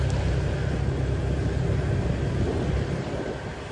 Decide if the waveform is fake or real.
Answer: real